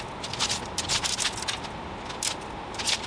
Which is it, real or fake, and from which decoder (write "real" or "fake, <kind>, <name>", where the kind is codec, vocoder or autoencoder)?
real